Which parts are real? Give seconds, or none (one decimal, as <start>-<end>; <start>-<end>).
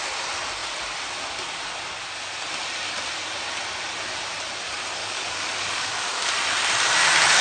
0.0-5.0; 6.3-7.4